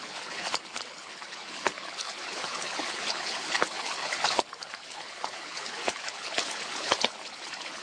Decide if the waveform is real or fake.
fake